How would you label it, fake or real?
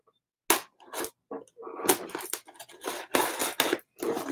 real